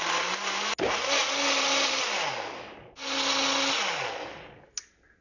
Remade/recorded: recorded